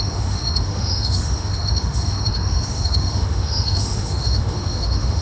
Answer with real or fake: fake